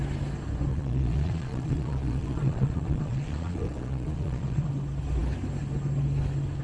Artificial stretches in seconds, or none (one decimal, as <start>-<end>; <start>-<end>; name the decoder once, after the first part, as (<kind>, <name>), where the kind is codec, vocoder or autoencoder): 0.7-4.7 (vocoder, Vocos)